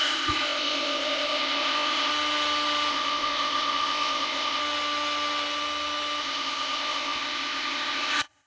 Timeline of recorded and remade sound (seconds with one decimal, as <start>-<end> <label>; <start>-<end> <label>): 0.0-2.1 remade; 2.1-2.9 recorded; 2.9-4.6 remade; 4.6-6.2 recorded; 6.2-8.5 remade